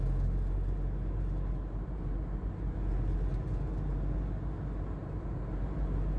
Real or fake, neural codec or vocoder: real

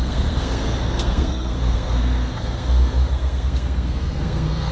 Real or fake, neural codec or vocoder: fake, codec, SNAC